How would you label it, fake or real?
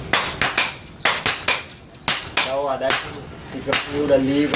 real